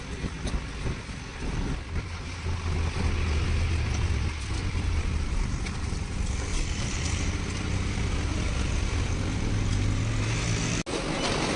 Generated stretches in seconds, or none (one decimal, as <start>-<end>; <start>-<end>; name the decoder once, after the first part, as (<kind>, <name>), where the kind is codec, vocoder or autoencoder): 1.3-3.1 (vocoder, BigVGAN v2); 4.6-9.5

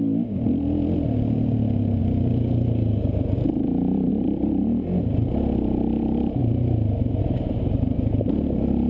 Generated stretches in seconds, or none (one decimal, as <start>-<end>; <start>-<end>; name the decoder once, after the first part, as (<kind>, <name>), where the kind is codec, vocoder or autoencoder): none

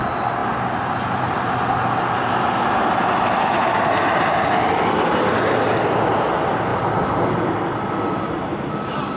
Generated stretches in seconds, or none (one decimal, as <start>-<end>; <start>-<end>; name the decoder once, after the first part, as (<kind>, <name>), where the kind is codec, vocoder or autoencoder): none

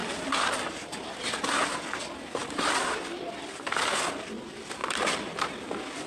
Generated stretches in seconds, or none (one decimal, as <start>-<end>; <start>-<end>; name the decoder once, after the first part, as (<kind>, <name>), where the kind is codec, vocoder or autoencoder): 0.0-1.0 (vocoder, BigVGAN v2); 2.4-3.0; 4.8-5.3

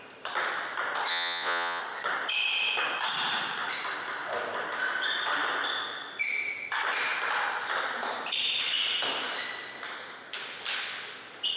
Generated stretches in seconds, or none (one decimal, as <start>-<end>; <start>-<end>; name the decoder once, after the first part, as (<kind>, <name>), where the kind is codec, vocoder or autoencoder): 1.1-1.8 (vocoder, Vocos)